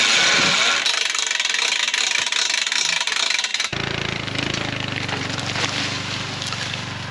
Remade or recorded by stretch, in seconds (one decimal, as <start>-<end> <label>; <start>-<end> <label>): 0.0-7.1 recorded